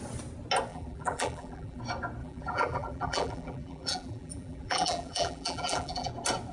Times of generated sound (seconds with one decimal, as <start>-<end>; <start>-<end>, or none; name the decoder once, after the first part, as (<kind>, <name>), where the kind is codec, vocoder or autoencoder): 0.7-1.8 (vocoder, BigVGAN v2); 2.2-6.1